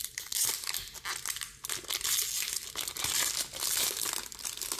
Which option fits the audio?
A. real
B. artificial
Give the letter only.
A